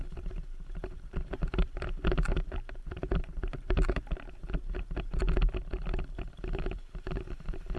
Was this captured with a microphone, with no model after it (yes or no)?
no